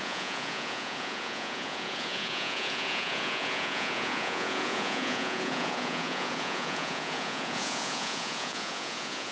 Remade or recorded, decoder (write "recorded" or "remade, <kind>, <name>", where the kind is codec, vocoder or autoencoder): remade, vocoder, Vocos